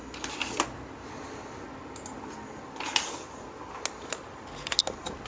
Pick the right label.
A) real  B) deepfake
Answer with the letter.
A